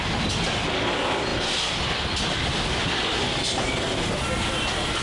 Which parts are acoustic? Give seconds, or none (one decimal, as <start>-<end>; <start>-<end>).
0.0-5.0